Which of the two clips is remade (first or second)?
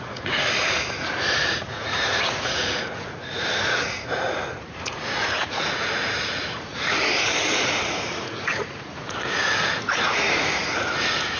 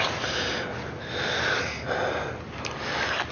first